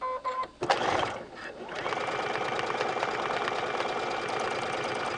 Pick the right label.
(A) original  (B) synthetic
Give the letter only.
A